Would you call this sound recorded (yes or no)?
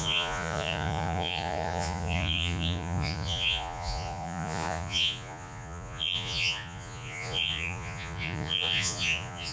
no